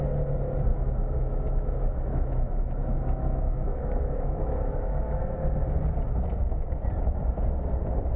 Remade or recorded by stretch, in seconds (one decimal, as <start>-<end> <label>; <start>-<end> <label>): 0.0-0.7 recorded; 0.7-5.2 remade; 5.2-8.2 recorded